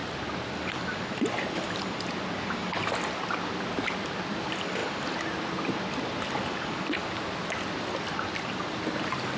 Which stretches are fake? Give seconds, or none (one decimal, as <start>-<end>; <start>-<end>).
none